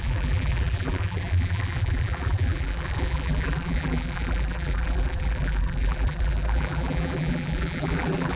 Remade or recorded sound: remade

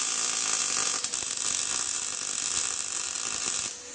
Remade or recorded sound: recorded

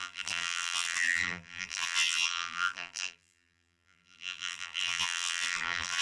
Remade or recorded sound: remade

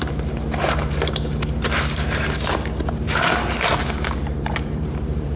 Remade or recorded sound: remade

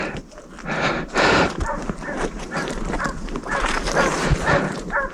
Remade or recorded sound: remade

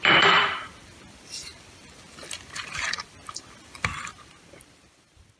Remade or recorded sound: remade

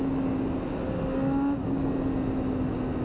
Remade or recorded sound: recorded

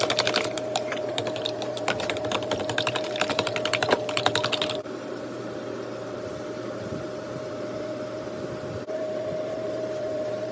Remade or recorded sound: remade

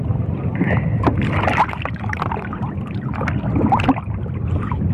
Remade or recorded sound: recorded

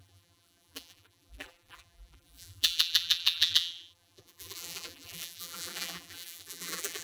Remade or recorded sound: remade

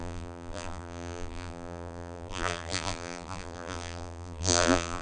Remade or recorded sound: remade